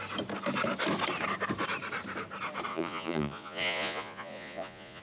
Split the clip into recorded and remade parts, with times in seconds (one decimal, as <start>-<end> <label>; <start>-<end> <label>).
0.0-2.7 recorded; 2.7-5.0 remade